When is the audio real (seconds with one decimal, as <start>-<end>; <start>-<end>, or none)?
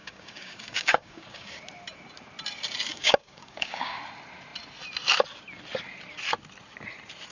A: 1.6-2.9; 4.0-7.3